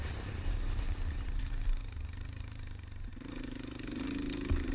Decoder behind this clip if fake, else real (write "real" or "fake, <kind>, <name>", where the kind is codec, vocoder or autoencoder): fake, vocoder, BigVGAN v2